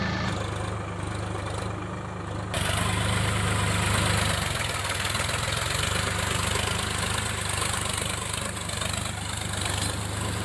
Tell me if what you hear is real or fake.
real